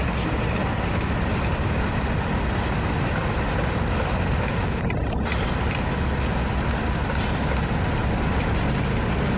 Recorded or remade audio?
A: recorded